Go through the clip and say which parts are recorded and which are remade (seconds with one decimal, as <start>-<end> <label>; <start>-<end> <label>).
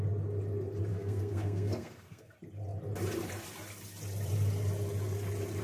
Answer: 0.0-0.9 recorded; 0.9-2.3 remade; 2.3-5.6 recorded